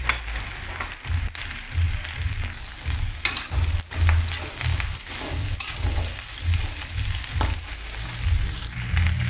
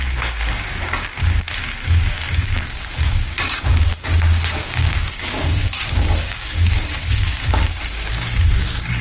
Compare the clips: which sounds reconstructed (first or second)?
second